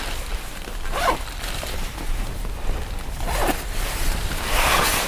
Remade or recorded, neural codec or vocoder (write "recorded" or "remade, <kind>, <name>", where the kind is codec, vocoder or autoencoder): recorded